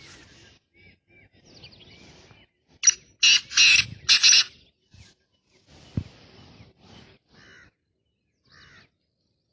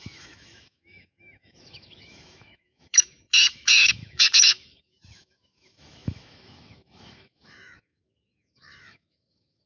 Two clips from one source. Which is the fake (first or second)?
second